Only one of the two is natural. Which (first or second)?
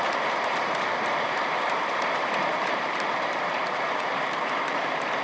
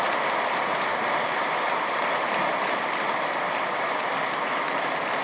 second